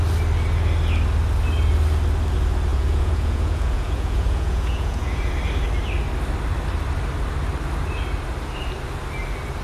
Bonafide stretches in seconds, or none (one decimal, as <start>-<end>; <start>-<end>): 0.0-2.7; 5.3-9.6